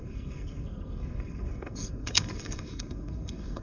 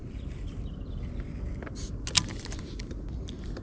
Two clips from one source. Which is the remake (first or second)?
first